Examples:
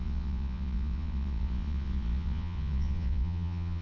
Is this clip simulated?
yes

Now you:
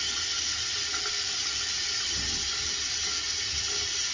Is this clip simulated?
no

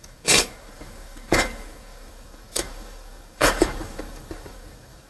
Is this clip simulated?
yes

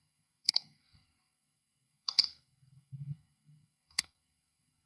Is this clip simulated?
yes